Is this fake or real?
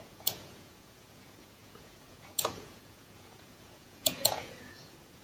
fake